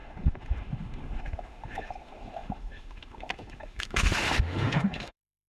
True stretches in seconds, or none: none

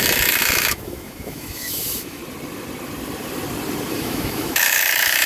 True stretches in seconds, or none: 2.2-3.9

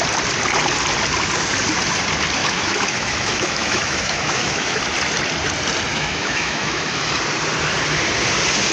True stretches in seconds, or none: 0.0-2.4; 4.8-5.9; 7.1-8.7

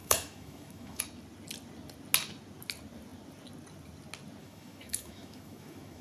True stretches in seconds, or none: 1.0-4.4